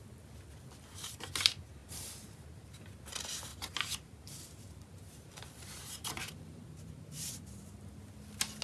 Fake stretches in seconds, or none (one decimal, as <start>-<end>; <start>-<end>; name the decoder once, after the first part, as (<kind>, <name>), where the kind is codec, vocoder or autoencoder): 1.8-2.8 (vocoder, BigVGAN v2); 3.5-7.3